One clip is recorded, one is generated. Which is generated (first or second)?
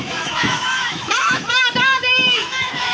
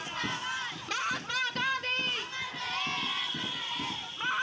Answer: first